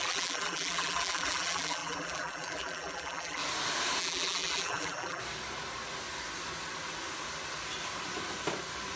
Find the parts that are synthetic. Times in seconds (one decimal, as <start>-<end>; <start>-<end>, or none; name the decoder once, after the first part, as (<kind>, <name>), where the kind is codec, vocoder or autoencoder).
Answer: 0.0-3.4 (vocoder, BigVGAN v2); 4.0-5.2